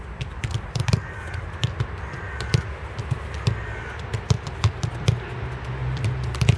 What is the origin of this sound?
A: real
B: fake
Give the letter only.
A